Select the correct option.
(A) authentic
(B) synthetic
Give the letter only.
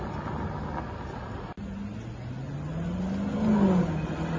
A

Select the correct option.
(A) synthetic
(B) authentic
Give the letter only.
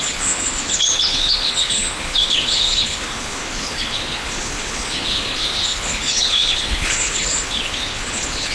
A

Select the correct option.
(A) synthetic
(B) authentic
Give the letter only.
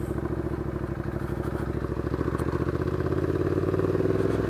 B